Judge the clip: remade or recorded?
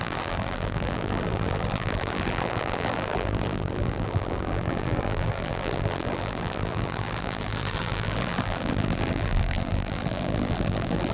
remade